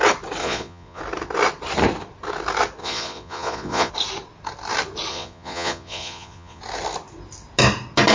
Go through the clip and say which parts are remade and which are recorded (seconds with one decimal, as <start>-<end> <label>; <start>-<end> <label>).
0.0-0.4 recorded; 0.4-1.0 remade; 1.0-2.8 recorded; 2.8-3.9 remade; 3.9-5.1 recorded; 5.1-6.6 remade; 6.6-8.1 recorded